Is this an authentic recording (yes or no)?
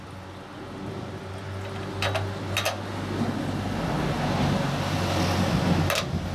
yes